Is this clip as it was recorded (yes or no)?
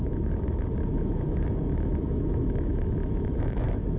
no